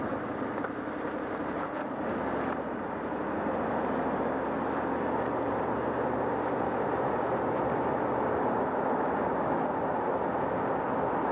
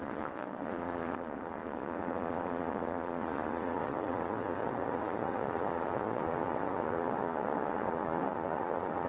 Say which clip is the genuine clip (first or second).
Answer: first